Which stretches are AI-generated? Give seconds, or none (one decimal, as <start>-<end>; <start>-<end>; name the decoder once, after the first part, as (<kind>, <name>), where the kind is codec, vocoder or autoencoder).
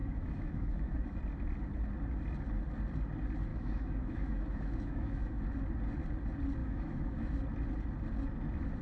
0.0-1.2 (autoencoder, DAC-VAE); 3.5-5.4; 6.6-7.3